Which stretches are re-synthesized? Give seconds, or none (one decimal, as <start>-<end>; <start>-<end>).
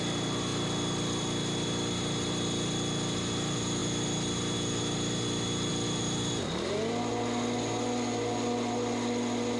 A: none